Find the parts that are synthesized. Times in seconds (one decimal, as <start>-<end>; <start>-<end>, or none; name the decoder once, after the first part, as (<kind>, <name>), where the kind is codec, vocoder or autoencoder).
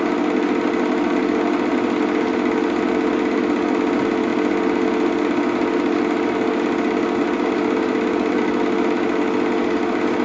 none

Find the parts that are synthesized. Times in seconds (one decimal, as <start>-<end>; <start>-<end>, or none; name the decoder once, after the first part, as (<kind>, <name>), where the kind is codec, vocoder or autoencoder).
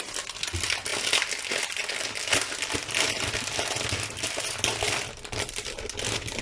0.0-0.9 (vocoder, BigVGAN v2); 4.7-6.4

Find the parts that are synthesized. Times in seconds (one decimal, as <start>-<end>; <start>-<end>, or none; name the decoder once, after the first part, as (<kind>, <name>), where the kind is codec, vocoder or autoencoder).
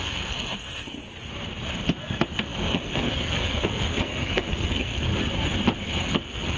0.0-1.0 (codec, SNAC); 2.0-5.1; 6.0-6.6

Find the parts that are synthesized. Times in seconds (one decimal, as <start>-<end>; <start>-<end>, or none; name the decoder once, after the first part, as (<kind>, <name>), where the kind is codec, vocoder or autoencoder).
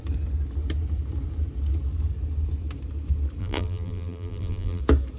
3.4-4.8 (vocoder, BigVGAN v2)